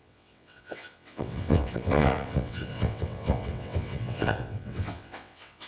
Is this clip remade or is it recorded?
remade